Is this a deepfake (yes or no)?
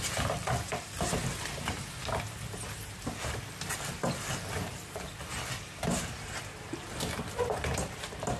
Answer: no